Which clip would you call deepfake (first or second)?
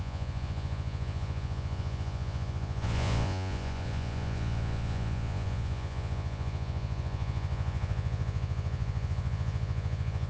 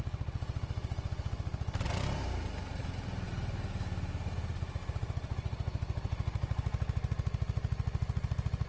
first